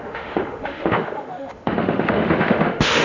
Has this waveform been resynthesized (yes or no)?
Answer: yes